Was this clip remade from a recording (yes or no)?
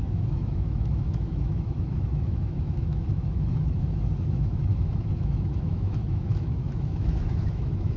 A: yes